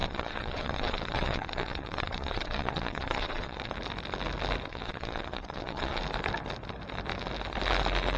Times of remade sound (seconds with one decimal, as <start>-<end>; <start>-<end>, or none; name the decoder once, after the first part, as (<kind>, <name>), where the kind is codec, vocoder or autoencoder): 0.0-3.7 (vocoder, WaveNeXt); 4.7-6.0